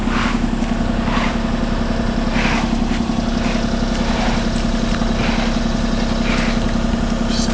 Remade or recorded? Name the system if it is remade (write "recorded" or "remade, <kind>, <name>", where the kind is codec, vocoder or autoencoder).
recorded